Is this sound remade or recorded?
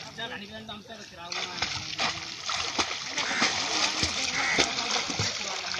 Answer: recorded